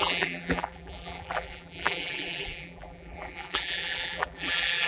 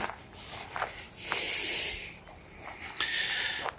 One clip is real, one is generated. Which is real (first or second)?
second